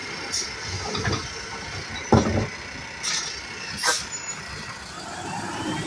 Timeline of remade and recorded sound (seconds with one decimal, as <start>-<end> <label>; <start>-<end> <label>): 0.0-1.5 remade; 1.5-5.0 recorded; 5.0-5.9 remade